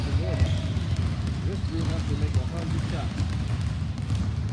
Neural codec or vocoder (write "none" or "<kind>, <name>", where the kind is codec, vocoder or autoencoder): none